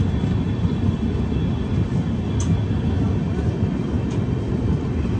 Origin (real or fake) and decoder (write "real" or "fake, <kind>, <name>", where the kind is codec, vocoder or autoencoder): real